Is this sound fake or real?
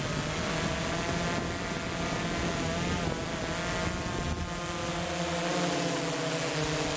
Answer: real